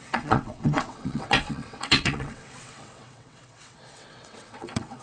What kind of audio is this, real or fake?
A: fake